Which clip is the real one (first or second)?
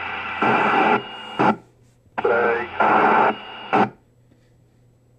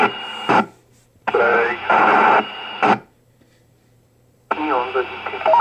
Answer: first